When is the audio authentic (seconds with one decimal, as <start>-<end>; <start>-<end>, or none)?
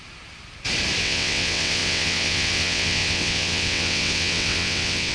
0.0-1.0